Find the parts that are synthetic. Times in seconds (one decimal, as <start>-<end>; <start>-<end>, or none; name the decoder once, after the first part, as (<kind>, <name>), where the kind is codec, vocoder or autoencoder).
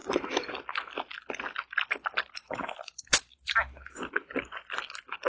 2.4-4.3 (autoencoder, DAC-VAE)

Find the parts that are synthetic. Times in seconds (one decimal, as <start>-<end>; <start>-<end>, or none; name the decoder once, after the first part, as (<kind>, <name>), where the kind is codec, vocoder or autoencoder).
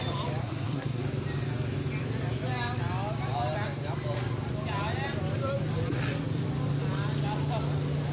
0.4-1.0 (codec, SNAC)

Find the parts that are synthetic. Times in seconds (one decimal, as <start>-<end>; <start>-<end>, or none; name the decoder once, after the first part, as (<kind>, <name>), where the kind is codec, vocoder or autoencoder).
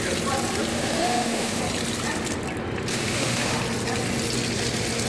0.7-1.6 (autoencoder, DAC-VAE); 2.9-3.6